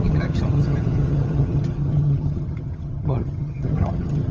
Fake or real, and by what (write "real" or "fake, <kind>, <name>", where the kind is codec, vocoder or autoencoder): fake, vocoder, HiFi-GAN